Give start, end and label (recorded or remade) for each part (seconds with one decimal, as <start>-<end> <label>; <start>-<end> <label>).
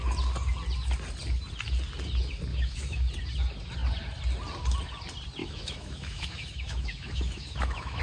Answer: 0.0-2.5 recorded; 2.5-3.1 remade; 3.1-5.4 recorded; 5.4-8.0 remade